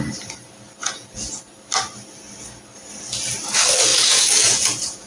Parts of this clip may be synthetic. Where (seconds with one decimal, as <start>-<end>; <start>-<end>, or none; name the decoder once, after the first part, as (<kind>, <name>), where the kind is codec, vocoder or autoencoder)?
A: 0.8-1.4 (vocoder, Vocos); 3.9-5.1